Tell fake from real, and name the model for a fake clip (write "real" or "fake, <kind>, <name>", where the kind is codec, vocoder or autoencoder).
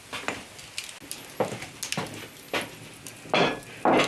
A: real